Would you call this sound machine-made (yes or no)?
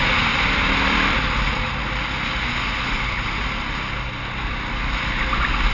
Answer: no